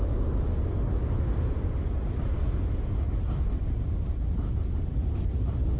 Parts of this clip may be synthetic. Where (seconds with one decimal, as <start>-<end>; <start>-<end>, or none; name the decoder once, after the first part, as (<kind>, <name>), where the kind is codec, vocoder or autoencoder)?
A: none